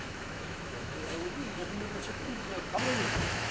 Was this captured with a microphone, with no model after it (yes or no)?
no